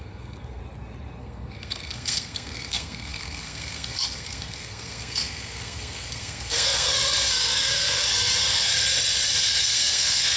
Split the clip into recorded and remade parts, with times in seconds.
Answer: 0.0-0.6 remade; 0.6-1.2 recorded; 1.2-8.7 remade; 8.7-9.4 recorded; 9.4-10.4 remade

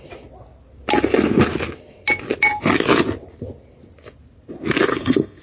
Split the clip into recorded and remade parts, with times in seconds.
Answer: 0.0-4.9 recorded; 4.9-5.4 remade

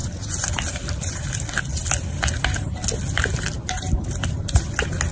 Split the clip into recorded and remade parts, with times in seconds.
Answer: 0.0-5.1 recorded

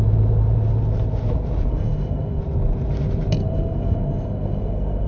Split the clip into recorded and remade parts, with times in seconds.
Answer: 0.0-1.7 recorded; 1.7-2.4 remade; 2.4-3.4 recorded; 3.4-5.1 remade